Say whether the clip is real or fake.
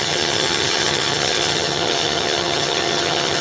fake